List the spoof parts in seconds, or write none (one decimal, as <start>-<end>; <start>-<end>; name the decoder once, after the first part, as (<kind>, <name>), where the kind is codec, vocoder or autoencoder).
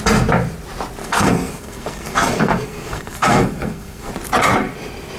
1.0-4.1 (codec, SNAC)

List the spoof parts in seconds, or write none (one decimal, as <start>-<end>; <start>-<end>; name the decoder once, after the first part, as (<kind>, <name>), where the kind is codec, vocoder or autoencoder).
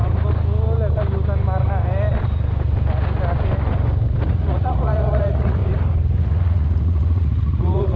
4.2-5.6 (vocoder, Vocos); 6.2-8.0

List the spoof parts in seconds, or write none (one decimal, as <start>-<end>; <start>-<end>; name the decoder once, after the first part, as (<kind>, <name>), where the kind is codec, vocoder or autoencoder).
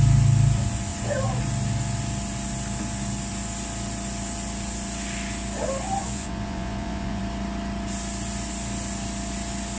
6.0-7.2 (vocoder, Vocos)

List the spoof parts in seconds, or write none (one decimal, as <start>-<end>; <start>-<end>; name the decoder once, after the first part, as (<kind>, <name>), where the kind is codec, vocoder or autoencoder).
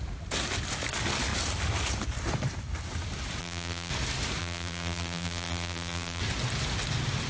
3.4-3.9 (vocoder, BigVGAN v2); 4.4-6.2